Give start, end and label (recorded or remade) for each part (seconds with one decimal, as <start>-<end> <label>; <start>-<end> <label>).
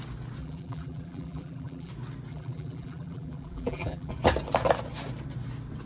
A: 0.0-0.4 recorded; 0.4-1.9 remade; 1.9-2.3 recorded; 2.3-4.1 remade; 4.1-5.8 recorded